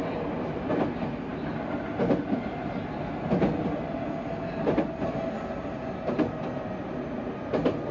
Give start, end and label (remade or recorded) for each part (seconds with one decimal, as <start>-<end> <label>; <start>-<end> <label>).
0.0-7.9 recorded